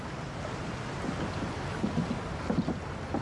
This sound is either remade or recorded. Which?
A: recorded